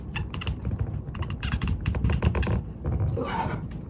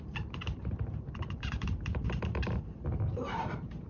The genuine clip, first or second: first